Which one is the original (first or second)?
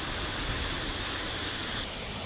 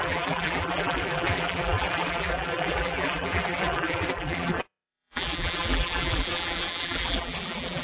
first